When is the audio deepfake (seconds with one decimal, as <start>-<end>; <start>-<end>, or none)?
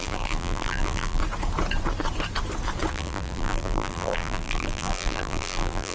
0.0-1.2; 2.9-5.9